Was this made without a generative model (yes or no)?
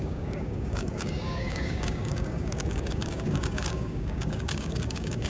no